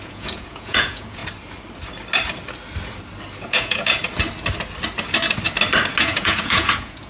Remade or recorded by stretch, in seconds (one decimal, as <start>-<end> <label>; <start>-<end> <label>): 0.0-1.2 remade; 1.2-3.4 recorded; 3.4-4.0 remade; 4.0-6.0 recorded; 6.0-7.1 remade